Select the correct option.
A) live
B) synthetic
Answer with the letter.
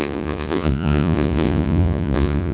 B